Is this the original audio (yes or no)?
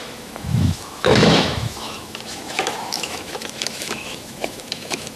no